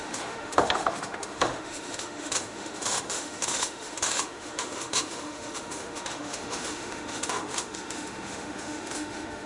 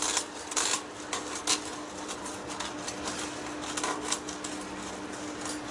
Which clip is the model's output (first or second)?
first